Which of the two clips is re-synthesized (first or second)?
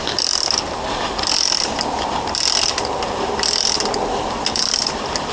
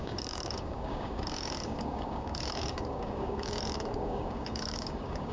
second